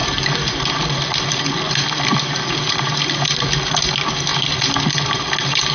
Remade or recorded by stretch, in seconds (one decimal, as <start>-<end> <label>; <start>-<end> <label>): 0.0-5.7 recorded